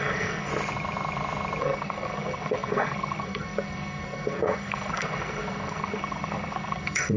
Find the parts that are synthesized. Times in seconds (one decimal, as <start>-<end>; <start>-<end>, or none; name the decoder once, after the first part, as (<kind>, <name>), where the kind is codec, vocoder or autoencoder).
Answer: 0.0-0.5 (codec, SNAC); 1.6-7.2